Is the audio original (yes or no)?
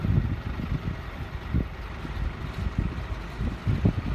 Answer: yes